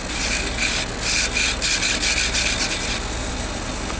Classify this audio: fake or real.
real